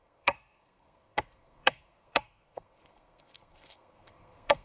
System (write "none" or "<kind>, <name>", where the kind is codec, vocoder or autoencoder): codec, SNAC